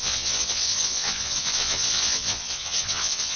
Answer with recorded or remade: remade